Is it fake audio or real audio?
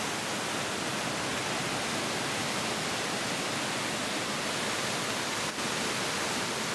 real